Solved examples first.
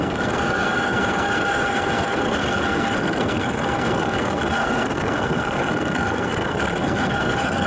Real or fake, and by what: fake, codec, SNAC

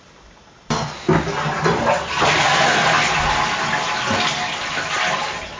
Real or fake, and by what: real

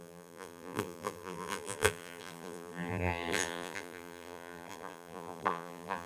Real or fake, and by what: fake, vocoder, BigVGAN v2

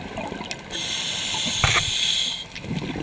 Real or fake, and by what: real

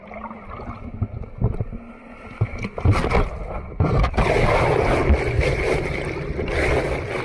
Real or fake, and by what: real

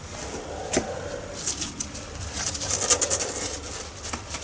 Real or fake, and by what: real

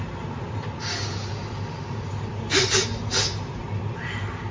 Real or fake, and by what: real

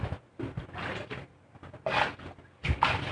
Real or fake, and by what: real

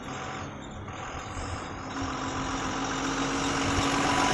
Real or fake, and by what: real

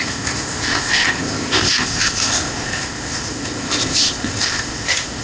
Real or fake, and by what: fake, codec, ZipCodec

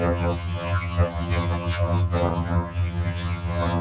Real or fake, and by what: fake, vocoder, HiFi-GAN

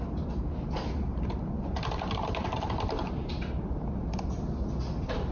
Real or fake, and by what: real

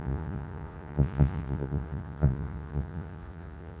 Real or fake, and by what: fake, vocoder, Vocos